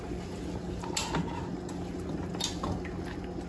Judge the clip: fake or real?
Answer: real